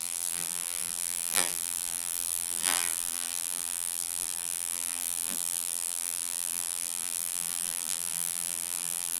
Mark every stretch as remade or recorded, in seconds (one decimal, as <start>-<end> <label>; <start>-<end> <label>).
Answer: 0.0-9.2 remade